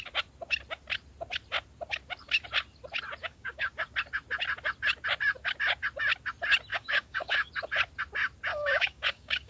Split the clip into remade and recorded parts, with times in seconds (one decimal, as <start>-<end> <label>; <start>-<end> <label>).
0.0-3.2 recorded; 3.2-3.7 remade; 3.7-6.7 recorded; 6.7-7.5 remade; 7.5-8.5 recorded; 8.5-9.5 remade